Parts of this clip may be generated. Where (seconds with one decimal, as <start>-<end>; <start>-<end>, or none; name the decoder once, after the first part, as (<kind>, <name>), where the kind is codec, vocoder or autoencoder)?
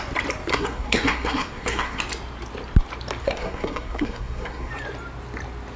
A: 0.5-2.0 (codec, SNAC); 3.2-4.7